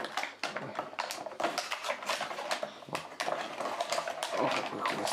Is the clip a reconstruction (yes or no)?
no